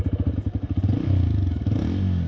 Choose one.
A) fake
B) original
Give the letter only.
B